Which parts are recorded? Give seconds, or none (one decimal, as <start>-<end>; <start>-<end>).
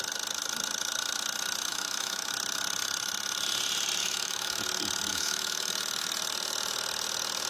0.0-1.7; 2.3-4.0; 4.6-5.1; 5.7-7.5